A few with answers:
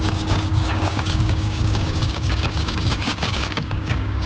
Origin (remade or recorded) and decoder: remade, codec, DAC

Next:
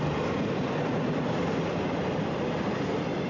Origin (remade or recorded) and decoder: remade, vocoder, BigVGAN v2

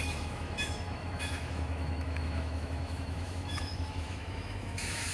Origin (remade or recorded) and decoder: remade, autoencoder, DAC-VAE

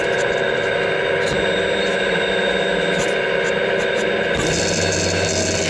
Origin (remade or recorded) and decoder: recorded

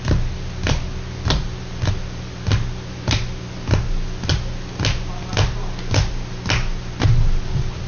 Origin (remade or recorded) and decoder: recorded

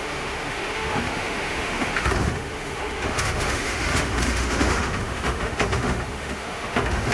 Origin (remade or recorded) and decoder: remade, autoencoder, DAC-VAE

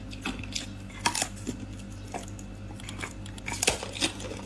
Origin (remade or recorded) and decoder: recorded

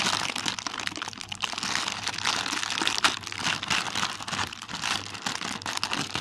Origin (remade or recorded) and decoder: recorded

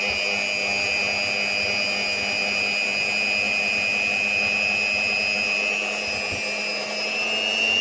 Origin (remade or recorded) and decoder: recorded